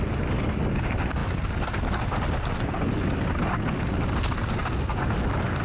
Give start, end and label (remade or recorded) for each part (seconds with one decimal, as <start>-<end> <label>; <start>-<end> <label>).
0.0-5.6 recorded